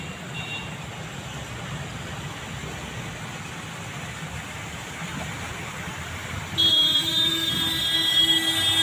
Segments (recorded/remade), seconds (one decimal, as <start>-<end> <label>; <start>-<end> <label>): 0.0-6.7 recorded; 6.7-7.5 remade; 7.5-8.8 recorded